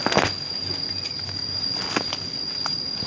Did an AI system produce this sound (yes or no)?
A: no